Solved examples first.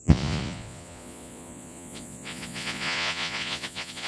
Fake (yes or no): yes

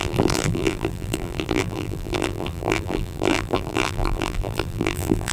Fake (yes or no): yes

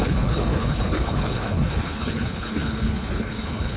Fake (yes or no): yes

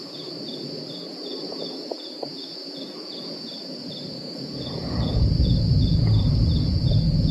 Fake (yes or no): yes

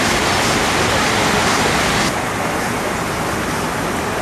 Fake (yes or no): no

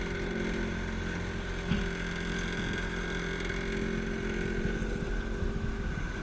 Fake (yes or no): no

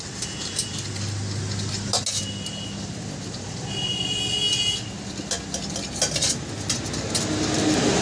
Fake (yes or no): no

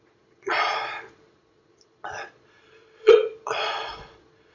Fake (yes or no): yes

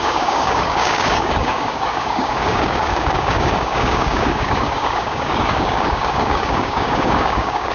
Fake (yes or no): yes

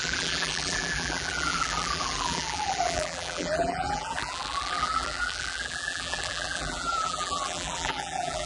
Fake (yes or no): yes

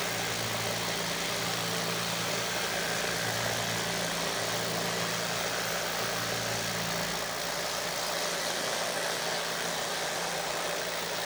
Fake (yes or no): no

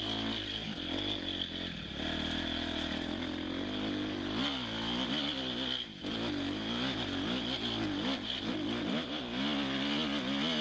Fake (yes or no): no